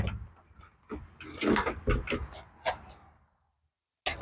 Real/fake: real